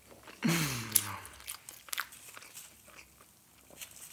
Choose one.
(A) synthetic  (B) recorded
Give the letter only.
B